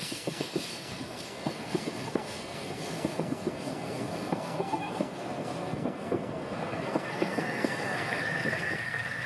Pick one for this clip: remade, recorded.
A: remade